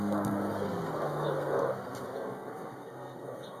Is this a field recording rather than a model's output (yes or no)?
no